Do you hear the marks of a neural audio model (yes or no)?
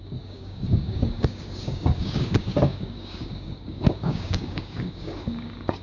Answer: yes